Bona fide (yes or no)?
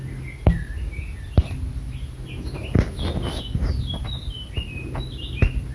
yes